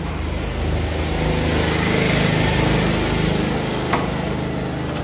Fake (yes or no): no